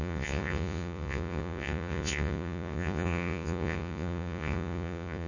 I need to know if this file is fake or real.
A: fake